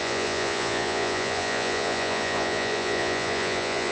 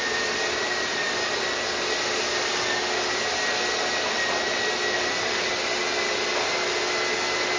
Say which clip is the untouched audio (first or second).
second